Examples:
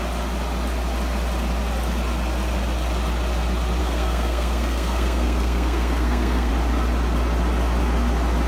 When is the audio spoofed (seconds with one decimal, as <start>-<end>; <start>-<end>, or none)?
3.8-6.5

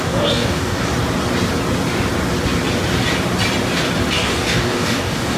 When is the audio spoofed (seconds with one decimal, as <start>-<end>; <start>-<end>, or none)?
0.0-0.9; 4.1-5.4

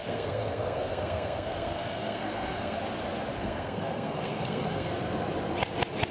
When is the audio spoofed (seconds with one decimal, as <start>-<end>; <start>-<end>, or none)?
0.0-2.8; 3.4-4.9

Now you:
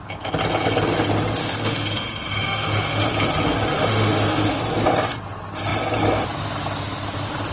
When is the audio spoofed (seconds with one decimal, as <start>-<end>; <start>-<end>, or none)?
1.4-3.1; 3.7-4.6